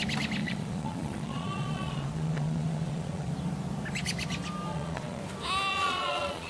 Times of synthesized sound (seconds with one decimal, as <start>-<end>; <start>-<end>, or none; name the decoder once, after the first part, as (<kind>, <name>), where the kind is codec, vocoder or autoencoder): 0.4-3.3 (vocoder, Vocos); 4.7-5.2; 5.7-6.5